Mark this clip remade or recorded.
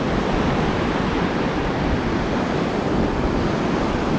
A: recorded